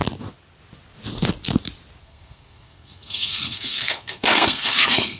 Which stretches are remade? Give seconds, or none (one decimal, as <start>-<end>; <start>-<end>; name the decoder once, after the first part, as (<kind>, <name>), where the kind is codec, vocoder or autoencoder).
2.0-5.2 (codec, SNAC)